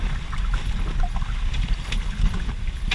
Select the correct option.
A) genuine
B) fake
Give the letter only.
A